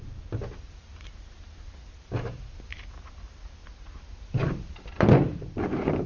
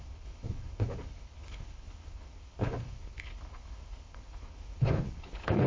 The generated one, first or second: second